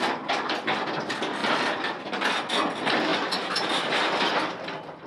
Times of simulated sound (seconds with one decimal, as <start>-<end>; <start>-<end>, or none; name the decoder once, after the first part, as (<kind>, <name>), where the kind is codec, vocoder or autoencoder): 1.4-2.0 (vocoder, BigVGAN v2)